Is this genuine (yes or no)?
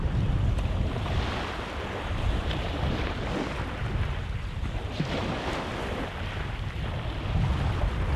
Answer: yes